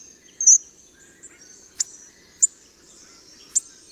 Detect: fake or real real